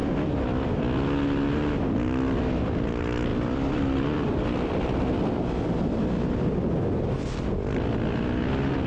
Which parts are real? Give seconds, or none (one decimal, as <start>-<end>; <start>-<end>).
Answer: 0.0-3.3; 5.4-8.9